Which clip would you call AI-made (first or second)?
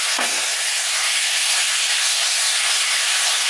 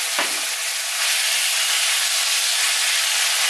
first